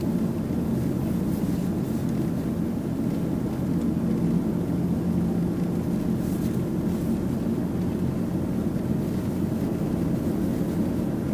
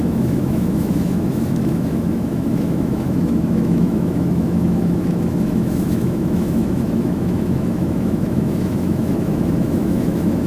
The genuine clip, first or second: first